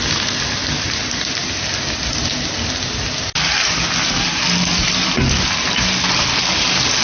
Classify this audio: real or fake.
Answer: real